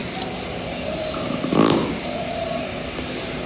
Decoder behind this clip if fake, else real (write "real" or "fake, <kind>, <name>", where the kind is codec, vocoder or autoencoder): real